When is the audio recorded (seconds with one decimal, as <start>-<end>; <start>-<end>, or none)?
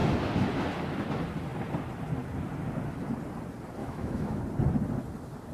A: 0.0-3.8; 4.4-5.5